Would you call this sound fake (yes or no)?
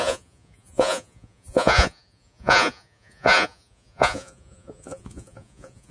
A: yes